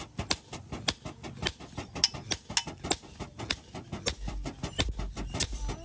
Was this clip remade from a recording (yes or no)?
no